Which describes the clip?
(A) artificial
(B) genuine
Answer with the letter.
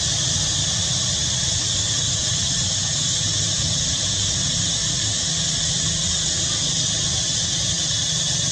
B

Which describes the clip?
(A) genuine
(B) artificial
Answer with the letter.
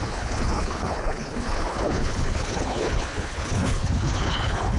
B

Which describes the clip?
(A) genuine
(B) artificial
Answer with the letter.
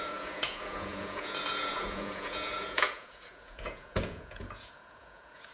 B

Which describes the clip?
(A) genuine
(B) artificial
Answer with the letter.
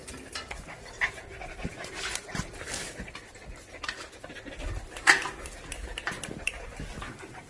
A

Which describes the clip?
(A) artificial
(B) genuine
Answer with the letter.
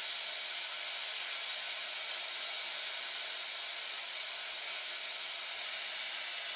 B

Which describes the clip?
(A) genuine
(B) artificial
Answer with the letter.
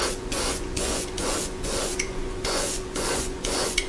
B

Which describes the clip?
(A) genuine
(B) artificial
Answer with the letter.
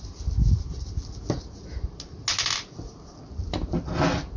A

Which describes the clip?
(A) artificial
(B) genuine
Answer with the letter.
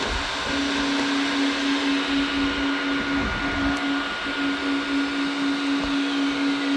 B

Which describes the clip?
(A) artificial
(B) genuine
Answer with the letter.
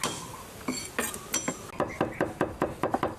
B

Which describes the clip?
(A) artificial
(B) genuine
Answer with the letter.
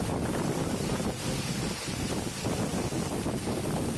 B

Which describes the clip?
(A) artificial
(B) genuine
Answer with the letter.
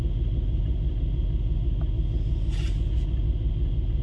B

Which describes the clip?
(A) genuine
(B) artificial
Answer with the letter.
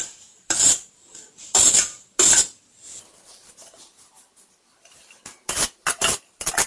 A